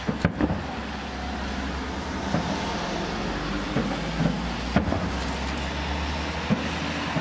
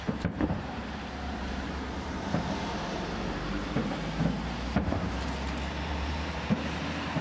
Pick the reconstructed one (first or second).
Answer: second